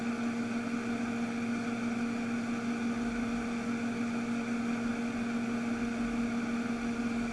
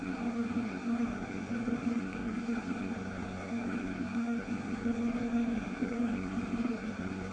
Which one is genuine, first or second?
first